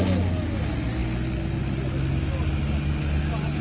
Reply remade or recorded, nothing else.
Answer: recorded